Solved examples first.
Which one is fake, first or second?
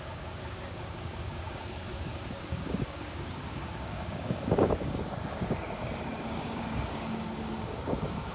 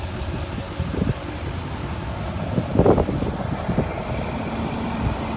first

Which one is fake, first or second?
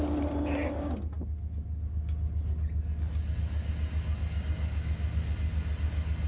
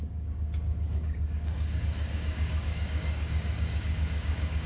second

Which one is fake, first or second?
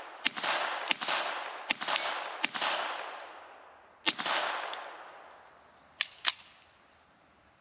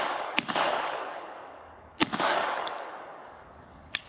second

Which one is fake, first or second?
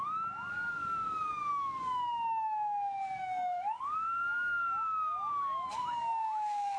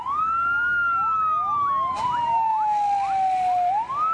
first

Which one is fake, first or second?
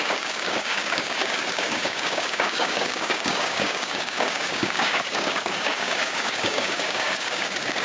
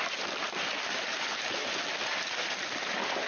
first